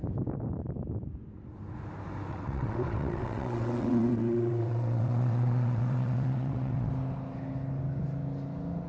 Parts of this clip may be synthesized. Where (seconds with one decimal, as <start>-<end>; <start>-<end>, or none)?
2.3-6.9